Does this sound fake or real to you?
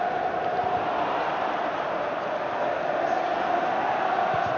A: real